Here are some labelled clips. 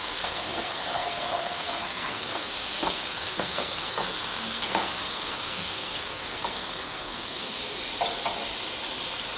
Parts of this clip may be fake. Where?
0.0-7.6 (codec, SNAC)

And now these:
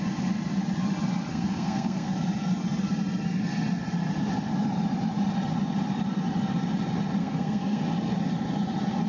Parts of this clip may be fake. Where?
1.3-2.1 (codec, SNAC); 7.2-7.8

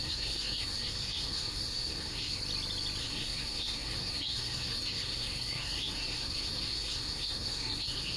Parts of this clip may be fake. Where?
0.0-2.4 (codec, SNAC); 3.0-8.2

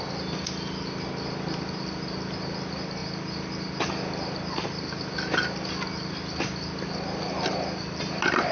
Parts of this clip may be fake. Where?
none

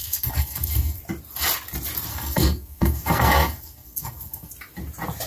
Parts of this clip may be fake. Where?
0.0-1.0 (codec, SNAC); 2.1-4.5

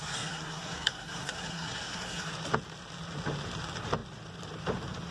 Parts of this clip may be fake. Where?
0.0-2.3 (codec, SNAC)